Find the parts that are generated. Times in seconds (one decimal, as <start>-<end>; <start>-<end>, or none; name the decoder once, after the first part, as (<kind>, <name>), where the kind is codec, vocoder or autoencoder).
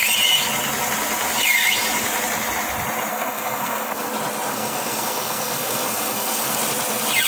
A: 3.1-4.1 (codec, SNAC); 4.5-6.6